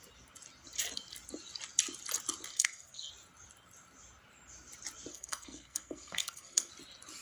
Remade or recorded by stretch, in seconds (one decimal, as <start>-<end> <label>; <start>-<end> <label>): 0.0-2.5 recorded; 2.5-3.1 remade; 3.1-5.1 recorded; 5.1-6.7 remade; 6.7-7.2 recorded